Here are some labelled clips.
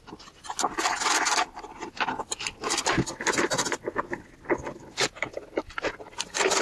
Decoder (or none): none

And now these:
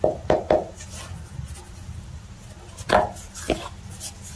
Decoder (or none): none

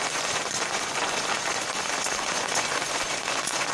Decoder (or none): vocoder, Vocos